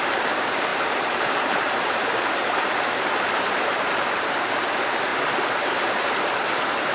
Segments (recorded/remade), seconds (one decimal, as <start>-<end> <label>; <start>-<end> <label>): 0.0-6.9 remade